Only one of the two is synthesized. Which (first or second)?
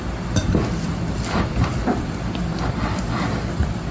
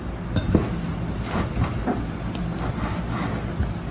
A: first